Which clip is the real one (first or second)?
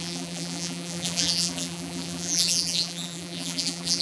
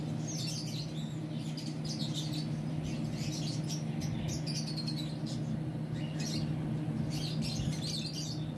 second